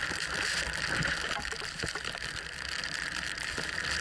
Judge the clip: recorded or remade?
recorded